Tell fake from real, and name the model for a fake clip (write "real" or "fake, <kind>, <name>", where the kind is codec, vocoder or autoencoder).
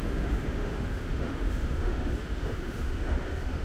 fake, autoencoder, DAC-VAE